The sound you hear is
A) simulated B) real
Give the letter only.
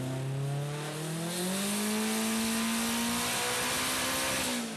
B